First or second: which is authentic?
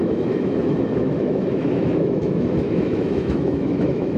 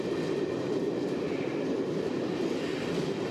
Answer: second